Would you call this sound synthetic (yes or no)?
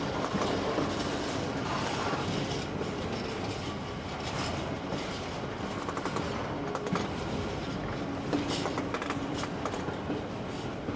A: no